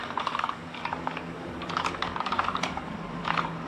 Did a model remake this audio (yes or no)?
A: yes